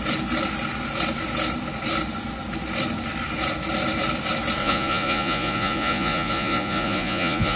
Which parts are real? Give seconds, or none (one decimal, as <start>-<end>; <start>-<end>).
0.0-4.6

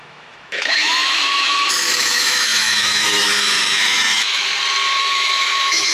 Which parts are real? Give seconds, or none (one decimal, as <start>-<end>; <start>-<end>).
4.5-5.0

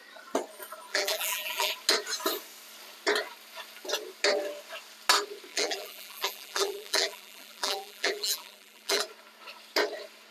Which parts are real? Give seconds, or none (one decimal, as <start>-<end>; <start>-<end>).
0.0-0.9; 1.7-5.5; 9.0-10.3

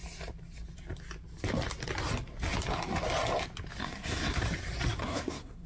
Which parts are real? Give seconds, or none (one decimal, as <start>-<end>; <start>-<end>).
0.0-3.8; 4.4-5.0